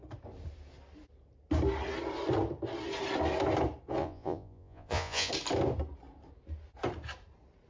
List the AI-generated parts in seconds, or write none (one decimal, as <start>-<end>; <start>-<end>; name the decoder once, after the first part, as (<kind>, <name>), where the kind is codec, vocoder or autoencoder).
4.0-5.3 (vocoder, Vocos)